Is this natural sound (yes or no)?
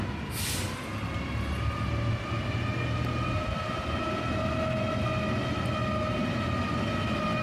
yes